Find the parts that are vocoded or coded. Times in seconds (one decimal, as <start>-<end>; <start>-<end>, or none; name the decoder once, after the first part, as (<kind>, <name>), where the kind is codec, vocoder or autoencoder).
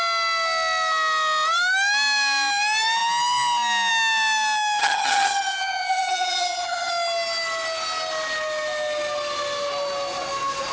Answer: 4.8-6.9 (vocoder, HiFi-GAN)